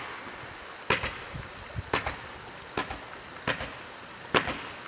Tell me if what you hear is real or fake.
real